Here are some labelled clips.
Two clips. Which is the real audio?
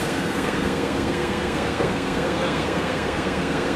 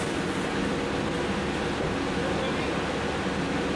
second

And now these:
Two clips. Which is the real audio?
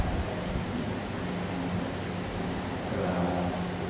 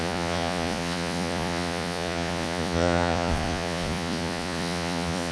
first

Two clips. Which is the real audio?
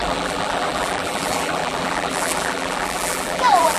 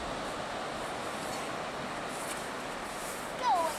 second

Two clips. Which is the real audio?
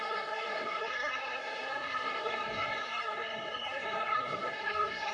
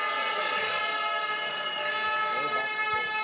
second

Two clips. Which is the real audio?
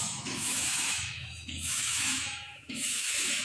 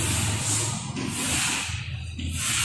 second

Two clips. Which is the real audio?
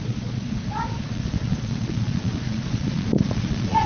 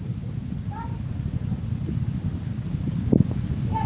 second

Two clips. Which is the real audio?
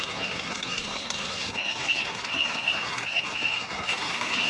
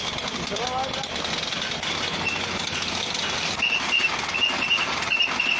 second